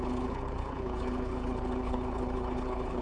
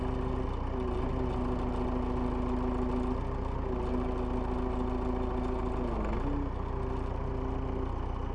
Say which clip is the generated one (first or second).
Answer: first